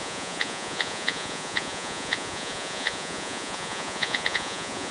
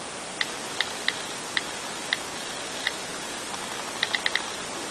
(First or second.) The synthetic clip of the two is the first